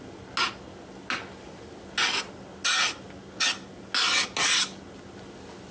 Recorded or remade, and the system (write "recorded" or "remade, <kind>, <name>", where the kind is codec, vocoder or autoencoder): recorded